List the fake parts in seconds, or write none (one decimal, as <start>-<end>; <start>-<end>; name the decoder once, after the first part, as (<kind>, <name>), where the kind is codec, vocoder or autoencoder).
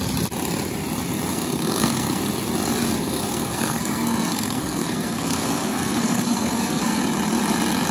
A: 1.3-2.2 (codec, SNAC); 3.0-7.0